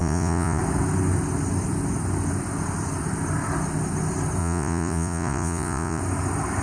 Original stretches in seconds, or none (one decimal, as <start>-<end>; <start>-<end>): 0.6-4.4; 6.0-6.6